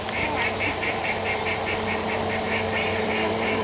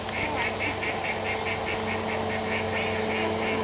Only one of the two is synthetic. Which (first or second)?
first